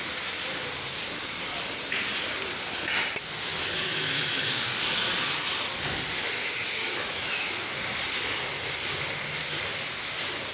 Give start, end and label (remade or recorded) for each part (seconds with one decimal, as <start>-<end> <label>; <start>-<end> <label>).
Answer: 0.0-3.5 recorded; 3.5-4.6 remade; 4.6-6.4 recorded; 6.4-7.8 remade; 7.8-10.5 recorded